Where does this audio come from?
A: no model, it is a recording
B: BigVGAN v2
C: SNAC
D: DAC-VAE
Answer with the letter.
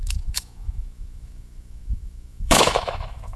D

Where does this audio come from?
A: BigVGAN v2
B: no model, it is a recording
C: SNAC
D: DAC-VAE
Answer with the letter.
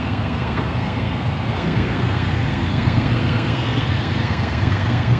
C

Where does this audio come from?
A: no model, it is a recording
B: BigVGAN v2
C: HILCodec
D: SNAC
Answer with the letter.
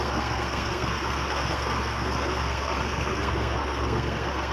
D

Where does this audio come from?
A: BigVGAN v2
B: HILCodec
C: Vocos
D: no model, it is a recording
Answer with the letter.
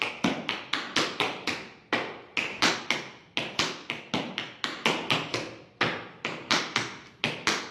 D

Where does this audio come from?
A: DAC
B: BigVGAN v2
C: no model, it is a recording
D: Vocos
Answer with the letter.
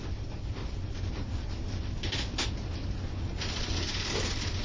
C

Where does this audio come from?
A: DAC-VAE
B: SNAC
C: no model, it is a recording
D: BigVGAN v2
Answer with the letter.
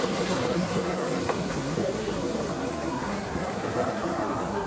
B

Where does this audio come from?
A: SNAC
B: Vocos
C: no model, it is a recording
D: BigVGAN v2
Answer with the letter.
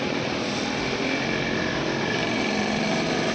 C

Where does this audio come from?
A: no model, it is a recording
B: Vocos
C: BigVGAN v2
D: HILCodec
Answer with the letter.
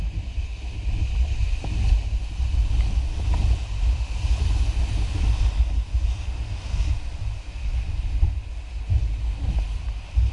A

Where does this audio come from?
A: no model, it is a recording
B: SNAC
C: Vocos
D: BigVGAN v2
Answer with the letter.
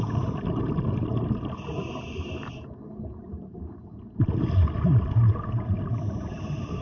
A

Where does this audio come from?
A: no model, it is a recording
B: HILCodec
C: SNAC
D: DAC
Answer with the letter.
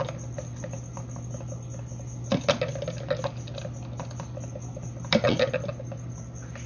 A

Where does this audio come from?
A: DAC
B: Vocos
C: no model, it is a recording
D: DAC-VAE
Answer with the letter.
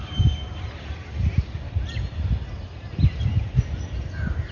C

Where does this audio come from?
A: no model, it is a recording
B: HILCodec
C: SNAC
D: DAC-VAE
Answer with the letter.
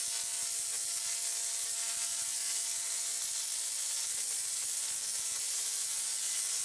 A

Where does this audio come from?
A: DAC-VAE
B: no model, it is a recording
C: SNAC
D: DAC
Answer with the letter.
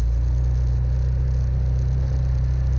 B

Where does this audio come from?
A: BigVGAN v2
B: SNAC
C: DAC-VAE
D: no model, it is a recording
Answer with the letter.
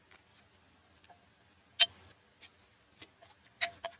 D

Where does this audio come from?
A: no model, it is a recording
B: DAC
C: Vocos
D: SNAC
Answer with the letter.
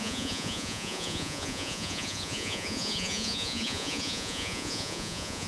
C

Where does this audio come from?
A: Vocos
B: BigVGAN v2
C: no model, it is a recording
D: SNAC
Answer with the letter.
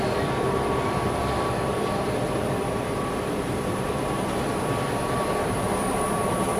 B